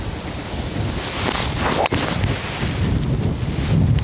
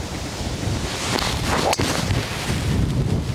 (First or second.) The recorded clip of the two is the first